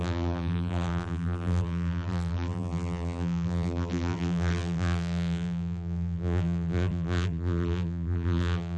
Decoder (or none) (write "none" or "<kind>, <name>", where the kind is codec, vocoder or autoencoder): vocoder, BigVGAN v2